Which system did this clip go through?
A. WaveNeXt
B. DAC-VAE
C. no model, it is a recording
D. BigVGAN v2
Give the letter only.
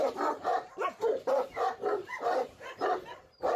D